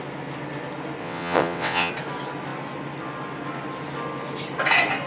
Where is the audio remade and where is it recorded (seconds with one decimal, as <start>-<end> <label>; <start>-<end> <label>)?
0.0-1.0 recorded; 1.0-1.9 remade; 1.9-5.1 recorded